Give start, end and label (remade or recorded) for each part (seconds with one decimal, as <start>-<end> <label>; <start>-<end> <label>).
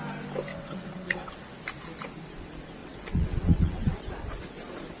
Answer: 0.0-0.5 recorded; 0.5-1.3 remade; 1.3-2.8 recorded; 2.8-4.0 remade; 4.0-5.0 recorded